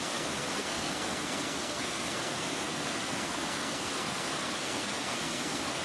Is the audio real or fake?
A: fake